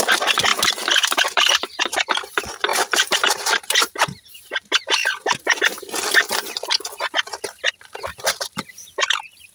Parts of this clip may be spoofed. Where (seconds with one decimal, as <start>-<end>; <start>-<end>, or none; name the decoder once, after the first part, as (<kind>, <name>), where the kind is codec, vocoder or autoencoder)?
0.5-1.8 (vocoder, BigVGAN v2); 2.7-5.6

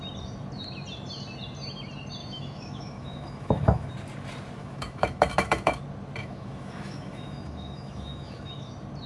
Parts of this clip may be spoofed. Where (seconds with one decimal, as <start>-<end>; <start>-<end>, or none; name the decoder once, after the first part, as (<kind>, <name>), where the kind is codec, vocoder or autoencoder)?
2.2-3.9 (autoencoder, DAC-VAE); 4.6-5.8; 6.2-8.7

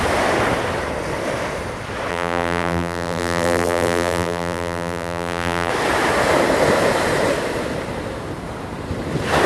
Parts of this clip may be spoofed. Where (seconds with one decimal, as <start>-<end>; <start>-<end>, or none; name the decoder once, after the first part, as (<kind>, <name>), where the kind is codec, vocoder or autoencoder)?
2.1-5.7 (vocoder, BigVGAN v2)

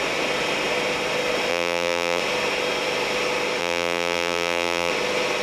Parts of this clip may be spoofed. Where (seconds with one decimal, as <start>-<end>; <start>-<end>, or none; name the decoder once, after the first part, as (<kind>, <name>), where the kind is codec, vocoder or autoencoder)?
1.5-2.2 (vocoder, BigVGAN v2); 3.6-4.9

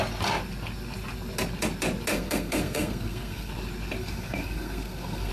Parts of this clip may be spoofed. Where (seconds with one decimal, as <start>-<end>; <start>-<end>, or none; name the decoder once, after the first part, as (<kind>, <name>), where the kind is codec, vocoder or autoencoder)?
2.1-3.5 (codec, SNAC); 4.0-5.3

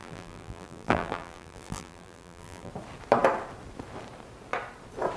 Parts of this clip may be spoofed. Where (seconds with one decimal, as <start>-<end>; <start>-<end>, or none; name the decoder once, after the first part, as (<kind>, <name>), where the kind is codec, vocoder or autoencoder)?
0.0-2.7 (vocoder, BigVGAN v2)

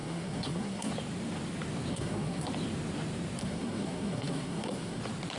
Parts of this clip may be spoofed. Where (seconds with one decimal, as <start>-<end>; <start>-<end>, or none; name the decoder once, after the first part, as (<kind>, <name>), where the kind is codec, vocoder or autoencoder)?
0.0-0.9 (codec, SNAC); 1.9-2.5; 3.4-5.0

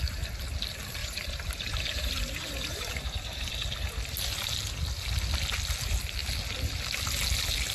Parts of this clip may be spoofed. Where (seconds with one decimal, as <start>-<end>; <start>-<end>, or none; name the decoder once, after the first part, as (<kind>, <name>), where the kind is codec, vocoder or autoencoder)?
1.0-3.5 (vocoder, BigVGAN v2)